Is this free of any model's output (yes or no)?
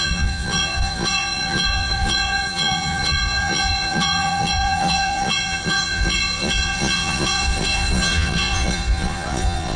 no